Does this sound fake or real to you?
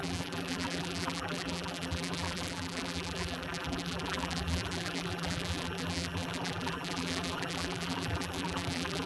fake